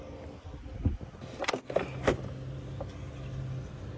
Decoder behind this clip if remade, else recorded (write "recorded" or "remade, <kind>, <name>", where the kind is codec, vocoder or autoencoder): recorded